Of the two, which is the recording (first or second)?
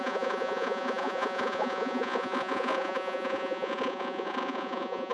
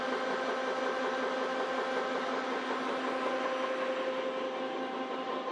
second